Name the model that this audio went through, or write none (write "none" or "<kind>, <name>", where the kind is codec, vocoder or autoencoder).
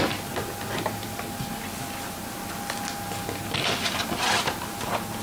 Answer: none